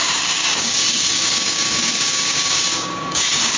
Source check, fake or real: fake